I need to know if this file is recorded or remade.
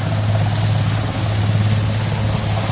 recorded